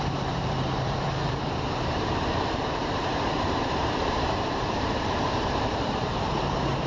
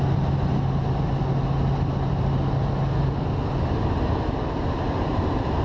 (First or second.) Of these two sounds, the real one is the second